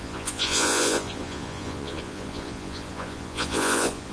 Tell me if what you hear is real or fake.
fake